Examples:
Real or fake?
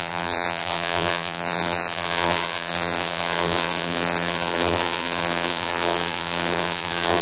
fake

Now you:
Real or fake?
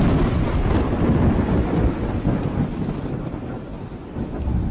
real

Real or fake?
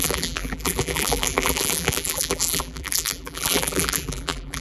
fake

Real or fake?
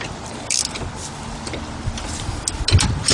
real